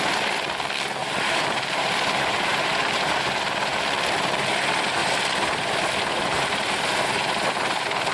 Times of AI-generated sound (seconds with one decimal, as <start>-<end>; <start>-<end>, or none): 1.0-2.5

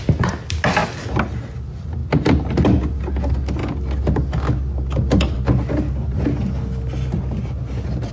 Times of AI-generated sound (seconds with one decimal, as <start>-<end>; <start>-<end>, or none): none

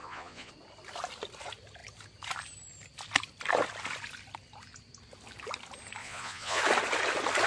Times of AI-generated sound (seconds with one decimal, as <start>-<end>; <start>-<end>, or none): 0.0-0.5; 6.0-6.6

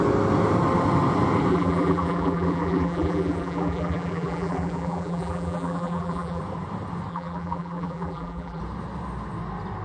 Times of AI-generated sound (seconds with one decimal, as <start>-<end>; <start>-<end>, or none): 1.5-6.4; 7.1-8.6

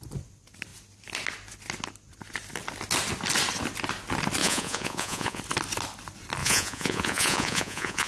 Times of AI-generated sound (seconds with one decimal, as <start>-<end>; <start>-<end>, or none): 4.4-5.4; 6.4-8.1

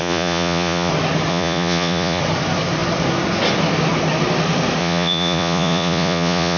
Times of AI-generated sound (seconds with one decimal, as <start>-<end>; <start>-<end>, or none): 0.0-0.9; 1.3-2.2; 4.8-6.6